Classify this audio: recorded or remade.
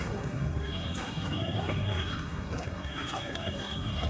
remade